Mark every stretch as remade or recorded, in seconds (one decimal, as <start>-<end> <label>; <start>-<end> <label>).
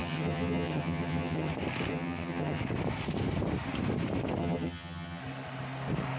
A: 0.0-1.5 remade; 1.5-1.9 recorded; 1.9-2.6 remade; 2.6-4.4 recorded; 4.4-5.2 remade; 5.2-6.2 recorded